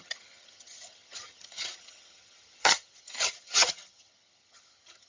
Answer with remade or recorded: remade